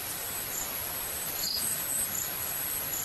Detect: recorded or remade recorded